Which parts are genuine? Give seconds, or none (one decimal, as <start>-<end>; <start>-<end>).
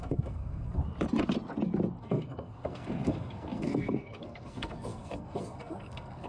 0.8-2.0